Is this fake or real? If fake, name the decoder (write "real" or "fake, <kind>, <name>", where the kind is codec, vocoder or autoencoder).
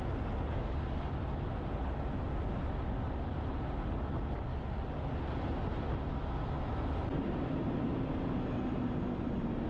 real